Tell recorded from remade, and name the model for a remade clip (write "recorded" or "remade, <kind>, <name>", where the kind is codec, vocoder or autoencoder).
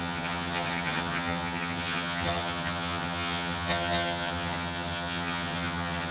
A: remade, vocoder, HiFi-GAN